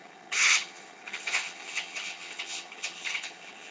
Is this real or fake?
fake